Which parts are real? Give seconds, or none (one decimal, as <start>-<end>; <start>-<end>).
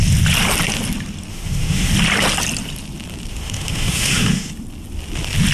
0.0-1.3; 1.9-3.3; 4.5-5.5